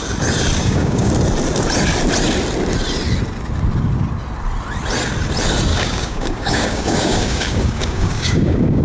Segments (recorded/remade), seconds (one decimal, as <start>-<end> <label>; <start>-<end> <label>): 0.0-0.6 recorded; 0.6-1.1 remade; 1.1-5.7 recorded; 5.7-8.8 remade